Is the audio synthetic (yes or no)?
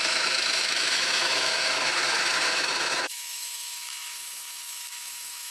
yes